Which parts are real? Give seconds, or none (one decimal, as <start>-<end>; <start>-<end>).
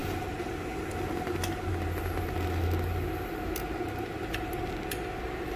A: 1.7-5.6